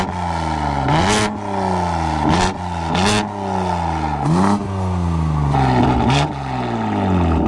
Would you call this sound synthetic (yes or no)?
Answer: no